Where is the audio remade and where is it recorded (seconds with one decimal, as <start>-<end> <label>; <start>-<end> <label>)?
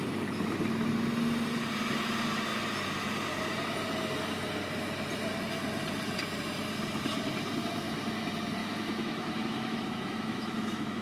0.0-8.6 recorded; 8.6-11.0 remade